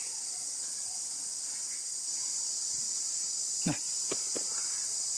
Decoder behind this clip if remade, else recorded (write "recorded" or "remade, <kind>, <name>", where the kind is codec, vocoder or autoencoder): recorded